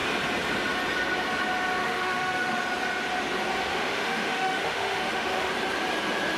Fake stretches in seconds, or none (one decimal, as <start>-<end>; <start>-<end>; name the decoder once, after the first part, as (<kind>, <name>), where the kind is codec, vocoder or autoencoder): 1.8-2.6 (autoencoder, DAC-VAE); 3.7-5.5

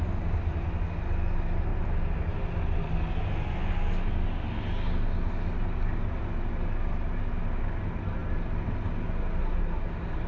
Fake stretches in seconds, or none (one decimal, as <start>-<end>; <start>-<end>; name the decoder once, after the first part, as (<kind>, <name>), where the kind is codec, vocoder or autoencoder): none

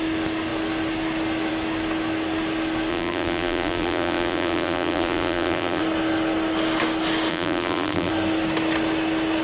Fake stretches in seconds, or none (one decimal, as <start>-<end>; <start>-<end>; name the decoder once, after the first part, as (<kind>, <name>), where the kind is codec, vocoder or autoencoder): 2.9-5.8 (vocoder, BigVGAN v2); 7.3-8.1

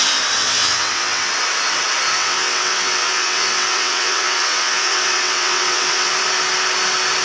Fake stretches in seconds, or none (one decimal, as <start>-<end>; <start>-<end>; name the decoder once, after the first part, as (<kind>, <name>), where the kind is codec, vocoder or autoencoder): 0.4-1.3 (vocoder, WaveNeXt); 2.1-6.1

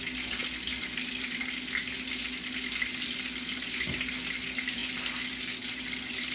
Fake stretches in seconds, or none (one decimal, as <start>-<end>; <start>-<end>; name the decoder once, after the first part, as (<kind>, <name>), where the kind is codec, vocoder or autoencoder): none

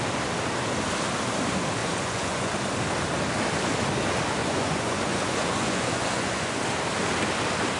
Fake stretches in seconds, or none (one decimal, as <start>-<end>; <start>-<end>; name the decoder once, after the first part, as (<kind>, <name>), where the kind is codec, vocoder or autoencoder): 1.8-2.5 (vocoder, Vocos); 4.4-6.6